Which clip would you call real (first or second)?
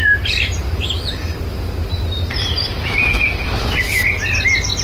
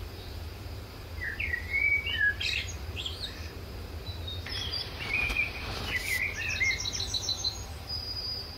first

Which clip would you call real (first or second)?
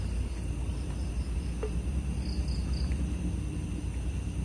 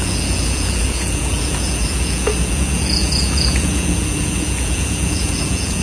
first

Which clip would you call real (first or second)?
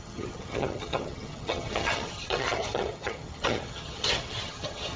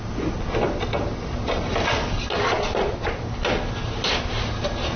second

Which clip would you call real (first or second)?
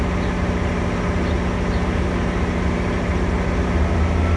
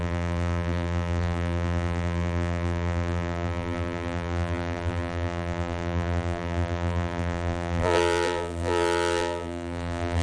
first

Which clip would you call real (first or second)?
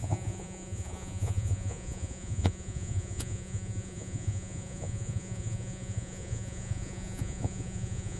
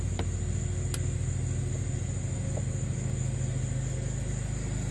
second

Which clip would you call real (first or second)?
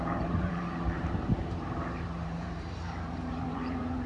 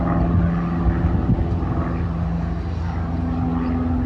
second